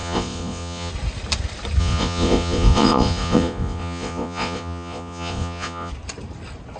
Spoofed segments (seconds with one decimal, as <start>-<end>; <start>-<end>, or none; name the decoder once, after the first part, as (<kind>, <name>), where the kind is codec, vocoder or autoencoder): 0.0-0.9 (vocoder, Vocos); 1.8-5.9